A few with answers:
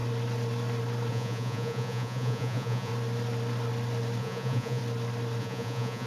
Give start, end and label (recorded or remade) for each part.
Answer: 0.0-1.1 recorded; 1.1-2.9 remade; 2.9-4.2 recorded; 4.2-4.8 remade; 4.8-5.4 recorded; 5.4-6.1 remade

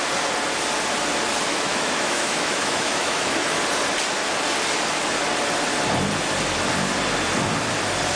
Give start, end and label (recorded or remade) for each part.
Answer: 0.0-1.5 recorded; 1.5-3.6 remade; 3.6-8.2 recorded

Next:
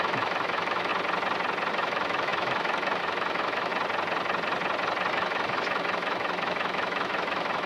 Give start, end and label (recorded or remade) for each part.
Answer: 0.0-0.9 remade; 0.9-1.7 recorded; 1.7-3.7 remade; 3.7-5.1 recorded; 5.1-7.7 remade